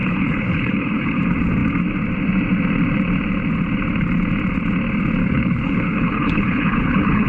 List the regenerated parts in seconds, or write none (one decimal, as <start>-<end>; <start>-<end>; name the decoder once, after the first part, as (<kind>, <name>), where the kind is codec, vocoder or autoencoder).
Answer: 0.0-1.2 (codec, HILCodec); 5.2-7.3